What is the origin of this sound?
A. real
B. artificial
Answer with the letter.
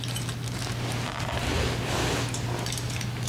A